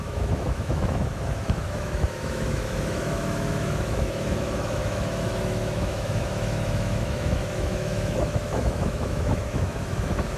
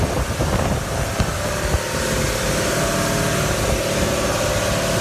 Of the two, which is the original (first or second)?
second